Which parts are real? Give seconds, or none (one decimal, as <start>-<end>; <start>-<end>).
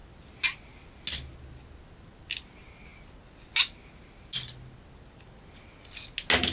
0.0-6.5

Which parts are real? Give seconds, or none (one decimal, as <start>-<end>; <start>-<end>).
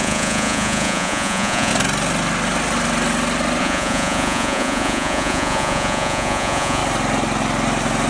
1.7-3.6; 6.8-8.1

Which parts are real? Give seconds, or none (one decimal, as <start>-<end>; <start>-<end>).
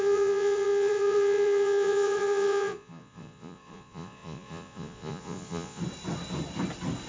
5.8-7.1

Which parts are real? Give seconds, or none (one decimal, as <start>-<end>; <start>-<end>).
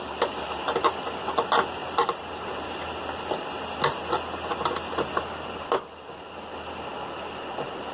0.0-7.9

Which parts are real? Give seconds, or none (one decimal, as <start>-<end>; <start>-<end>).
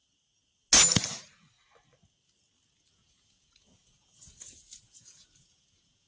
0.0-2.9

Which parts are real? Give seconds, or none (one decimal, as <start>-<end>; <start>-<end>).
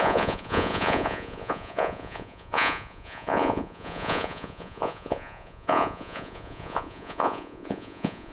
none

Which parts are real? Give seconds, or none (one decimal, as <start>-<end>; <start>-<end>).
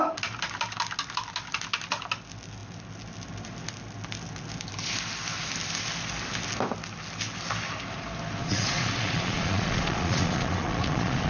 0.0-8.4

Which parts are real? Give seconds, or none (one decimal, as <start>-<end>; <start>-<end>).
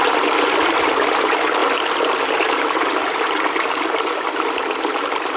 0.0-5.4